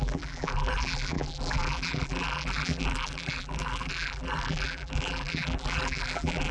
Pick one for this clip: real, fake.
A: fake